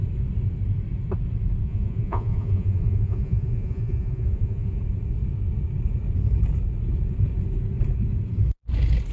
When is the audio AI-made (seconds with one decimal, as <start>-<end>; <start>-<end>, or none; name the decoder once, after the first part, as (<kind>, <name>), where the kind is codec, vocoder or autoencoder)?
1.6-4.8 (vocoder, Vocos)